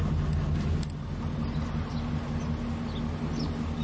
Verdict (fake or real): real